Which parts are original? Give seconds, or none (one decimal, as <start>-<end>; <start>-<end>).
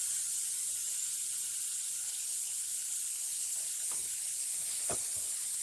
0.0-2.0